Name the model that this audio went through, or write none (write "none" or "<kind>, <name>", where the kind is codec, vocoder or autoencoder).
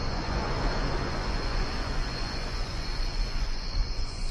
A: vocoder, Vocos